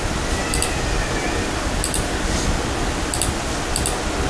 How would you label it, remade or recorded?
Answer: recorded